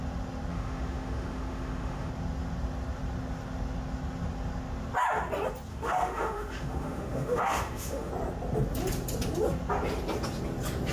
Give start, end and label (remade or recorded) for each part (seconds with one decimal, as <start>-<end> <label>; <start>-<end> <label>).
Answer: 0.0-0.5 recorded; 0.5-2.1 remade; 2.1-5.7 recorded; 5.7-8.1 remade; 8.1-10.9 recorded